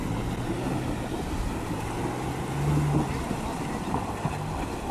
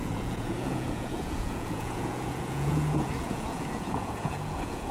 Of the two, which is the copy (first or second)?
second